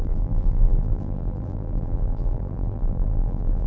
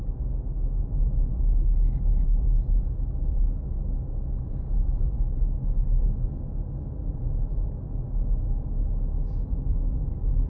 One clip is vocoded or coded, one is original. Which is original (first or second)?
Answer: second